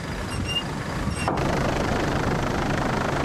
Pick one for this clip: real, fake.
fake